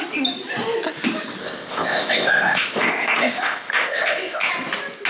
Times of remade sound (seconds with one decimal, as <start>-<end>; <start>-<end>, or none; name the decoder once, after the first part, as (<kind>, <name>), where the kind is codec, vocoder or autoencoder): 1.4-4.5 (codec, ZipCodec)